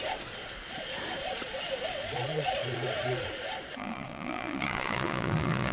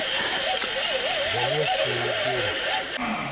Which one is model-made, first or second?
first